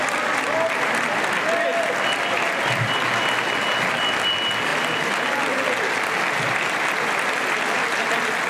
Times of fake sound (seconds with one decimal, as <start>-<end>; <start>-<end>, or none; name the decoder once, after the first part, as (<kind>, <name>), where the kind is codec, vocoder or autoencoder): none